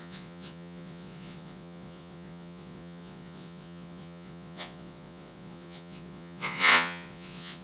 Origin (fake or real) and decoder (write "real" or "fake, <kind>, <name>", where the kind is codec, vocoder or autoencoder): fake, vocoder, Vocos